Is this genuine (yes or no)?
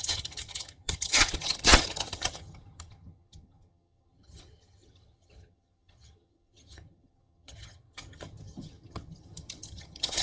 no